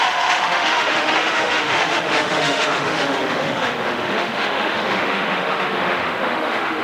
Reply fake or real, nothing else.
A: fake